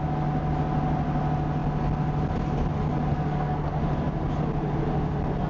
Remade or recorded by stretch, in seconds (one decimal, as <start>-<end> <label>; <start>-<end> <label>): 0.0-3.1 recorded; 3.1-3.8 remade; 3.8-5.5 recorded